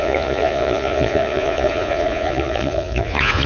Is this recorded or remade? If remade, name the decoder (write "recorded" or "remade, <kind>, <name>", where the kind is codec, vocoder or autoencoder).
remade, vocoder, Vocos